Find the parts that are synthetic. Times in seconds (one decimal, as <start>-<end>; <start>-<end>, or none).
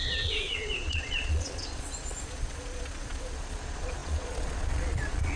0.0-5.4